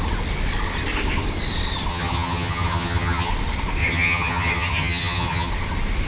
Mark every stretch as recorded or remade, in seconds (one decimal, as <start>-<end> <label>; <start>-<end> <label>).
0.0-1.9 recorded; 1.9-3.3 remade; 3.3-3.8 recorded; 3.8-5.5 remade; 5.5-6.1 recorded